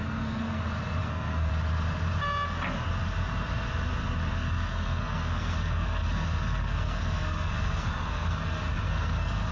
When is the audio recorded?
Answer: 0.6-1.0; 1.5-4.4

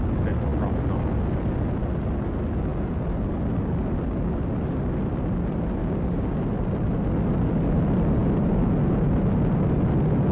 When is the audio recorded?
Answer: 0.0-5.8; 6.4-10.3

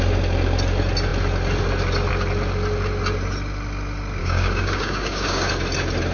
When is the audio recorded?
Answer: 0.0-4.2; 5.5-6.1

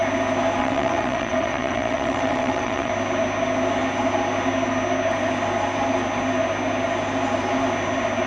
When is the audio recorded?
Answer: 0.0-0.6; 2.9-8.3

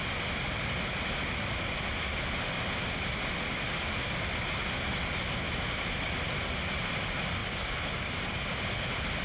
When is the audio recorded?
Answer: 0.0-7.4; 8.6-9.2

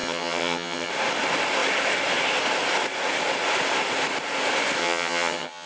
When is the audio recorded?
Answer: 0.9-4.8

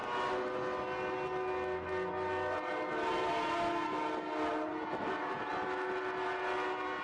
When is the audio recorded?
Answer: 0.0-7.0